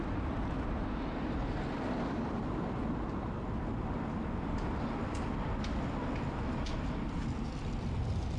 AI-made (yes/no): no